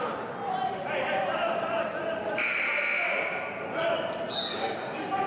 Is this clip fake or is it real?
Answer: real